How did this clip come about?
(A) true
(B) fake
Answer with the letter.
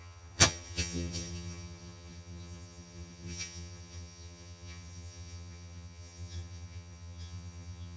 B